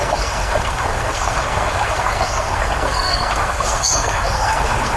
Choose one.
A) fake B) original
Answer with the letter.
A